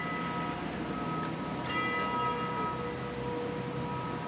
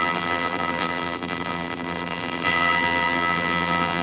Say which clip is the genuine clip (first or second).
first